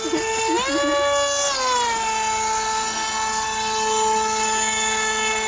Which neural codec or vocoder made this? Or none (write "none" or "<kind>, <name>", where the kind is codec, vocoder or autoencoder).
none